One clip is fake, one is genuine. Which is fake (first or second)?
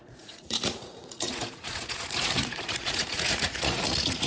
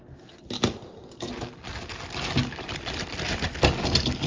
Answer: first